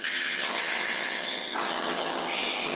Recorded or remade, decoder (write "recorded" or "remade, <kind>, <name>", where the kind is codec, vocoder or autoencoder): remade, vocoder, HiFi-GAN